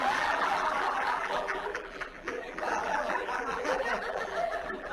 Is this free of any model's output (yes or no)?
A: no